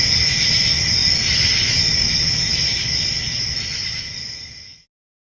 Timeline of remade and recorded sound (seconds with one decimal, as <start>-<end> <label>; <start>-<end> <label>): 0.0-5.3 recorded